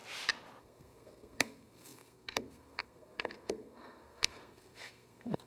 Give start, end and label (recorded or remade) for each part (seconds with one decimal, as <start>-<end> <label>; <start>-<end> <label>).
0.0-0.6 recorded; 0.6-5.5 remade